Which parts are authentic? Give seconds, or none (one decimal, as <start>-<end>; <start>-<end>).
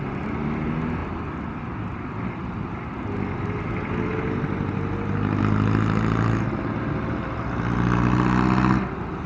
0.0-9.3